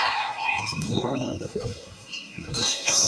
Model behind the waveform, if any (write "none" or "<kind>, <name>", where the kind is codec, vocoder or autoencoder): codec, SNAC